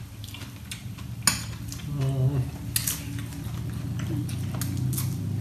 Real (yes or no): yes